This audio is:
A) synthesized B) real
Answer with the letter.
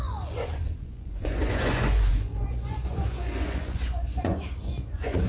A